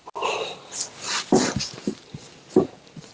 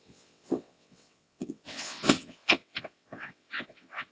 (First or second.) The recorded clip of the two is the first